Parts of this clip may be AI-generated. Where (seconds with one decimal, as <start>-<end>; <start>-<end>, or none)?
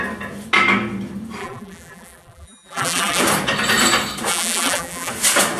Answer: 1.4-3.2; 4.3-5.1